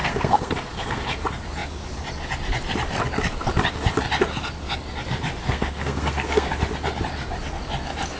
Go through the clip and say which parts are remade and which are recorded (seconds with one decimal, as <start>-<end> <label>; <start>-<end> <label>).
0.0-1.0 remade; 1.0-5.4 recorded; 5.4-6.5 remade; 6.5-8.2 recorded